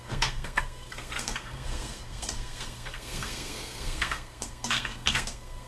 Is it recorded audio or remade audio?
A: remade